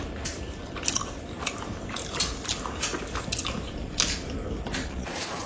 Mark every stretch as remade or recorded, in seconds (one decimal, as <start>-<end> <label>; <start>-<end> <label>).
0.0-4.8 recorded; 4.8-5.5 remade